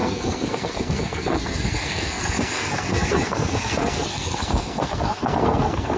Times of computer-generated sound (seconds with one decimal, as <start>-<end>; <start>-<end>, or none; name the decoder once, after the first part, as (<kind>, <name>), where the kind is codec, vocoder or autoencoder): 0.0-6.0 (codec, SNAC)

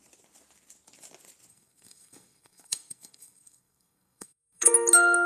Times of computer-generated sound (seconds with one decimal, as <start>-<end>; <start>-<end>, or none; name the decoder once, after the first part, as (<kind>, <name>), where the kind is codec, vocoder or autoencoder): 1.5-4.7 (codec, SNAC)

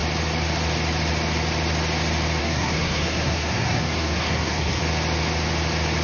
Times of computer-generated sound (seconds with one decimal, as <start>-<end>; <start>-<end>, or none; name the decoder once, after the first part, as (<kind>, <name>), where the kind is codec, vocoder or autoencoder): 2.4-4.8 (codec, SNAC)

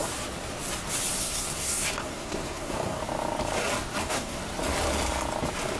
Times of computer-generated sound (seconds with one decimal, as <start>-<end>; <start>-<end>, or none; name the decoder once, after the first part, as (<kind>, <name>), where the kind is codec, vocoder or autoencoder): 1.2-3.0 (codec, SNAC); 4.0-4.4

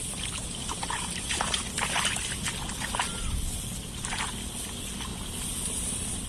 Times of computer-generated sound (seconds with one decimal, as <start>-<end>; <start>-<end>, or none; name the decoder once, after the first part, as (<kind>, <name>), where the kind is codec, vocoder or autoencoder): none